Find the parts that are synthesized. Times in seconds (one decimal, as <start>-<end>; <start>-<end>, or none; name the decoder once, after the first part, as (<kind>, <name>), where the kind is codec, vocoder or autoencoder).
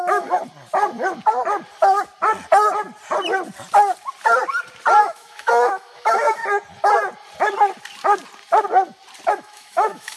0.0-0.4 (autoencoder, DAC-VAE); 5.0-6.4; 9.3-10.2